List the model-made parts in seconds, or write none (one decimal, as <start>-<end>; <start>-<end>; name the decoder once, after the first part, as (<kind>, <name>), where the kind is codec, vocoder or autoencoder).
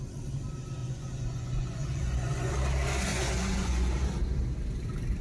0.8-2.5 (vocoder, Vocos); 3.1-3.9